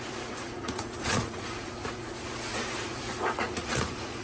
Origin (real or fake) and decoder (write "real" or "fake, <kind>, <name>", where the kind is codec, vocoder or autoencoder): fake, vocoder, Vocos